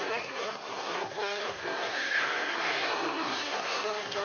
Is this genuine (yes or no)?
no